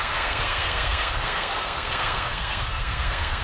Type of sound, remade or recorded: remade